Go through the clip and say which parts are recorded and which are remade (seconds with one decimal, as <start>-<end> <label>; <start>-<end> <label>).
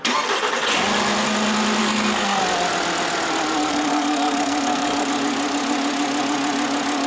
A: 0.0-1.8 recorded; 1.8-2.4 remade; 2.4-3.7 recorded; 3.7-5.1 remade; 5.1-7.1 recorded